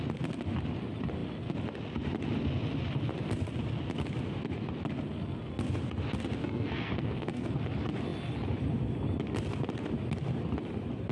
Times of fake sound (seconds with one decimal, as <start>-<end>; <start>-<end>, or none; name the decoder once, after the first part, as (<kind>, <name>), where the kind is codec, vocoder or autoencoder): 6.4-7.5 (codec, SNAC)

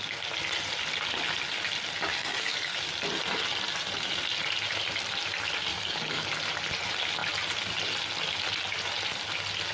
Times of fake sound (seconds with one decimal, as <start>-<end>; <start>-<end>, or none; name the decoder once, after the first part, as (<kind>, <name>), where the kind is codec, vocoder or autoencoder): 2.1-2.9 (codec, DAC); 5.7-6.3

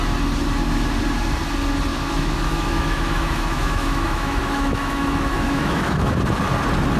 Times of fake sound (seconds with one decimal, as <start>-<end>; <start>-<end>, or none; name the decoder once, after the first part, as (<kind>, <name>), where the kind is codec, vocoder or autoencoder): 1.9-6.1 (autoencoder, DAC-VAE)